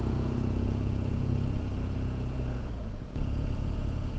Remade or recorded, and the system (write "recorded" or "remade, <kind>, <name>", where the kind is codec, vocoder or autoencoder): remade, vocoder, Vocos